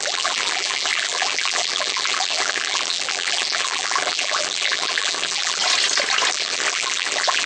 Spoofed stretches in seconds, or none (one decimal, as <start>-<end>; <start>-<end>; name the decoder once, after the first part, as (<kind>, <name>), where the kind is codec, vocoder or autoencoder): 0.0-5.6 (vocoder, BigVGAN v2); 6.3-7.5